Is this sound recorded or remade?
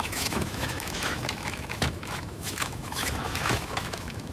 remade